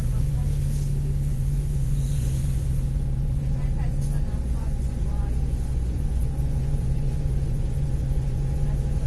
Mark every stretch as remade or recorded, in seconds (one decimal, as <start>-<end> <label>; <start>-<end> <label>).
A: 0.0-0.4 remade; 0.4-1.3 recorded; 1.3-9.1 remade

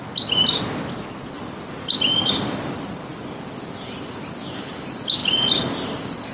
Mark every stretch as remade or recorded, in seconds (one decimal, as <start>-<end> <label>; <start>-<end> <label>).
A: 0.0-6.3 recorded

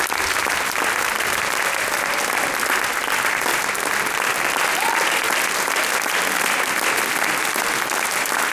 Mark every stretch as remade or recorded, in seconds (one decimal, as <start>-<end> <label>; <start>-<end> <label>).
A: 0.0-8.5 recorded

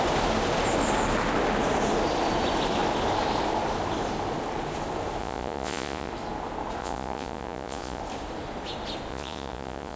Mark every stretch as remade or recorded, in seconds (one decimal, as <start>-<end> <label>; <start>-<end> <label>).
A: 0.0-5.2 recorded; 5.2-6.1 remade; 6.1-6.8 recorded; 6.8-8.0 remade; 8.0-9.1 recorded; 9.1-10.0 remade

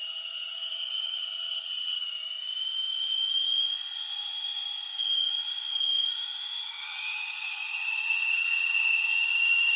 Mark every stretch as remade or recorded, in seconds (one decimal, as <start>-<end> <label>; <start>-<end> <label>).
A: 0.0-2.0 remade; 2.0-6.8 recorded; 6.8-9.8 remade